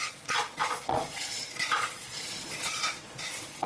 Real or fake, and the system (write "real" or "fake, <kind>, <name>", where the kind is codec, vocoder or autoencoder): fake, vocoder, Vocos